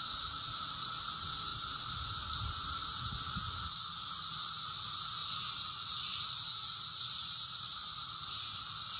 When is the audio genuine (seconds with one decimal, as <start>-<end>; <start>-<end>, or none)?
0.0-1.5; 3.0-5.2; 8.1-9.0